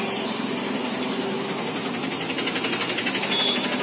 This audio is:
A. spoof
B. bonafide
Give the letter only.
B